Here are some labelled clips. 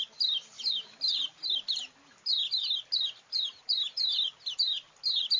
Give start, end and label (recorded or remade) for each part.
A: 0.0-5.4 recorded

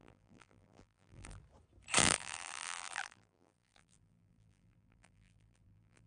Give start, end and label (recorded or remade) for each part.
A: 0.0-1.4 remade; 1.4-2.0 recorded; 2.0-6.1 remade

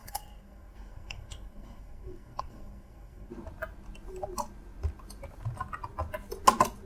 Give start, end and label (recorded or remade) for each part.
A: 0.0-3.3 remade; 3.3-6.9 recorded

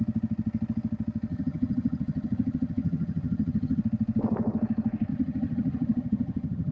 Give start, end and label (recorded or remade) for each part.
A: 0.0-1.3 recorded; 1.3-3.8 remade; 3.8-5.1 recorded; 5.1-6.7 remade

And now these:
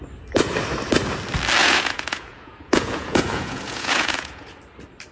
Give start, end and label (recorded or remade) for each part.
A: 0.0-1.6 recorded; 1.6-4.6 remade; 4.6-5.1 recorded